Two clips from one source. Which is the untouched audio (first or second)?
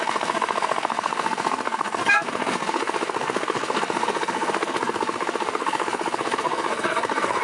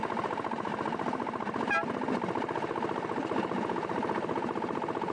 second